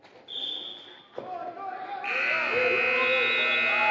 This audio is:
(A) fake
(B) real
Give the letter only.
B